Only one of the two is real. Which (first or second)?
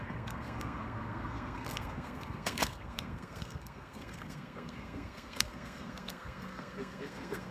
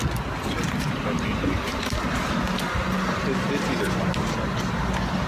second